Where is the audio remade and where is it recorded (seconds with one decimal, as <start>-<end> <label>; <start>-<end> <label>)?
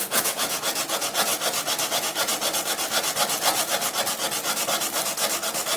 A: 0.0-1.3 remade; 1.3-1.9 recorded; 1.9-2.3 remade; 2.3-5.8 recorded